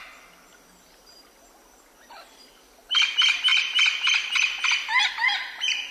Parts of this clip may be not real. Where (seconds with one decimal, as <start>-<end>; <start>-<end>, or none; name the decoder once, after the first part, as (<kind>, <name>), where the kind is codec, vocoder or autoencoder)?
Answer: 3.5-5.1 (vocoder, BigVGAN v2)